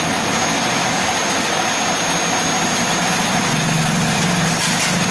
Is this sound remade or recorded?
recorded